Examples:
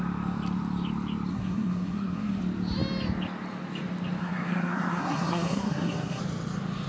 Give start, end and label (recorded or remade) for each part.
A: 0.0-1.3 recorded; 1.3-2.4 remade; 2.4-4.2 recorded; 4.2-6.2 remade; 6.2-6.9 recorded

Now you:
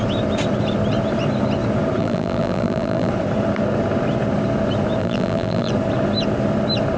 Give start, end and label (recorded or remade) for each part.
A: 0.0-2.0 recorded; 2.0-3.1 remade; 3.1-5.0 recorded; 5.0-5.7 remade; 5.7-7.0 recorded

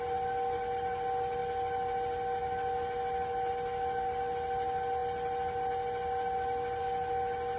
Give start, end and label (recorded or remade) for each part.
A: 0.0-7.6 recorded